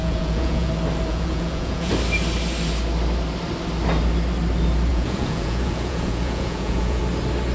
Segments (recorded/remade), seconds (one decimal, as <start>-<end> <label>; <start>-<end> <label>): 0.0-0.7 remade; 0.7-1.1 recorded; 1.1-1.9 remade; 1.9-4.9 recorded; 4.9-7.0 remade; 7.0-7.5 recorded